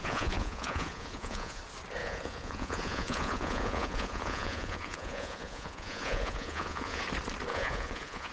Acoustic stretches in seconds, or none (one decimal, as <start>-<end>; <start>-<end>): 1.6-2.0; 7.0-7.5